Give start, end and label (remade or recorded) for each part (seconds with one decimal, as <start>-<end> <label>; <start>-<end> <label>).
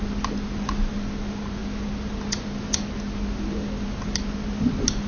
0.0-5.1 recorded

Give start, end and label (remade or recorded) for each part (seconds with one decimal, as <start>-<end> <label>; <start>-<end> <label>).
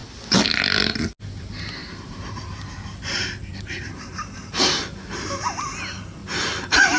0.0-1.8 recorded; 1.8-2.7 remade; 2.7-3.5 recorded; 3.5-4.8 remade; 4.8-6.2 recorded; 6.2-7.0 remade